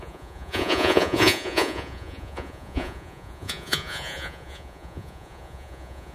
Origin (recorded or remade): remade